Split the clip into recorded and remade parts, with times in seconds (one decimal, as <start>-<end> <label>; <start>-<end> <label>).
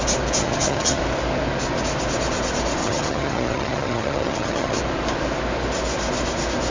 0.0-0.4 recorded; 0.4-1.0 remade; 1.0-2.8 recorded; 2.8-4.8 remade; 4.8-6.7 recorded